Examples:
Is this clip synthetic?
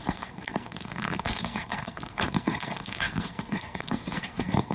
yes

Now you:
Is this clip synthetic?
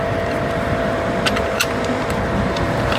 yes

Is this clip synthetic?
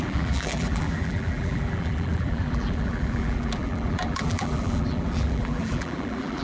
yes